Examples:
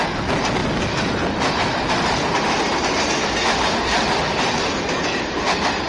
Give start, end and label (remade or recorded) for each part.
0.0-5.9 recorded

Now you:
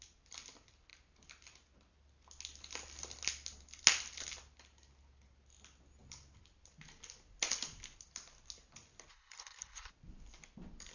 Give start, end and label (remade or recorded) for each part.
0.0-9.1 recorded; 9.1-9.9 remade; 9.9-10.9 recorded

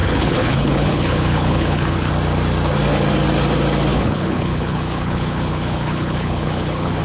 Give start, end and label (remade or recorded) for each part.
0.0-2.1 remade; 2.1-3.9 recorded; 3.9-7.0 remade

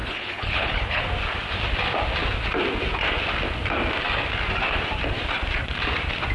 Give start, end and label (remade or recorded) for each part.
0.0-1.0 remade; 1.0-6.3 recorded

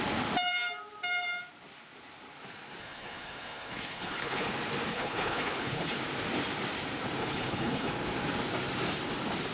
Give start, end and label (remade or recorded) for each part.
0.0-2.8 recorded; 2.8-4.5 remade; 4.5-4.9 recorded; 4.9-6.0 remade; 6.0-7.2 recorded; 7.2-7.9 remade; 7.9-9.5 recorded

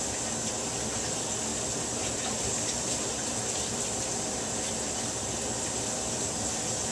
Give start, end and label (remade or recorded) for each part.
0.0-6.9 recorded

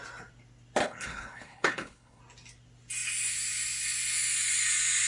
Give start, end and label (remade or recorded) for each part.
0.0-0.8 recorded; 0.8-2.2 remade; 2.2-5.1 recorded